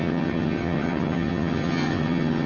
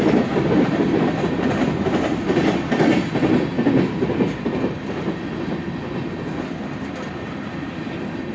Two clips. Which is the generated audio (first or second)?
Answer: first